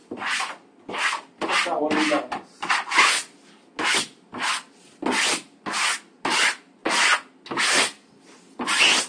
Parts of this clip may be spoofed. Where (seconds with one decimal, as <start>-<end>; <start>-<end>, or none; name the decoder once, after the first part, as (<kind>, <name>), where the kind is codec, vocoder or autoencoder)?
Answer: none